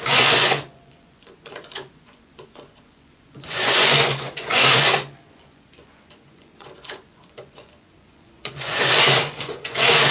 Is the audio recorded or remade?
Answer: remade